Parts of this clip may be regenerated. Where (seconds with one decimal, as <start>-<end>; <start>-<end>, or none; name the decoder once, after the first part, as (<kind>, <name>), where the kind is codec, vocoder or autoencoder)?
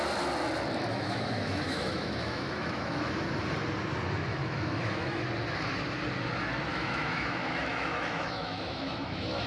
0.9-3.1 (autoencoder, DAC-VAE); 4.3-5.2; 6.7-9.5